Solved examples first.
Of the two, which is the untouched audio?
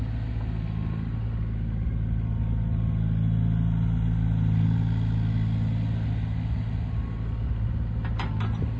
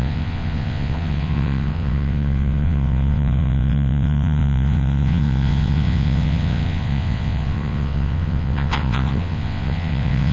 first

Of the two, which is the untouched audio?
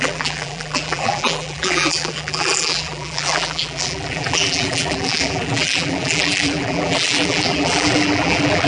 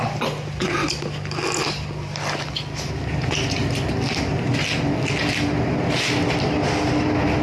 second